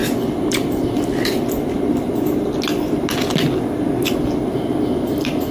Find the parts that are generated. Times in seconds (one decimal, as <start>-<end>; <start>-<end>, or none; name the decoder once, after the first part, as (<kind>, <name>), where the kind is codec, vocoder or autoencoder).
none